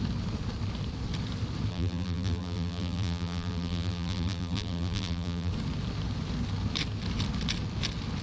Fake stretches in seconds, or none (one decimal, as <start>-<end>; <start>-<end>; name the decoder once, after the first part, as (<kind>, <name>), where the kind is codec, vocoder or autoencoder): 1.7-5.5 (vocoder, BigVGAN v2)